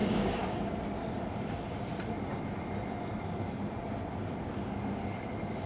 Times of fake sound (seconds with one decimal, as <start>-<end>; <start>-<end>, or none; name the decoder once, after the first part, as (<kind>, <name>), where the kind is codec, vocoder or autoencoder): 0.0-0.7 (codec, DAC)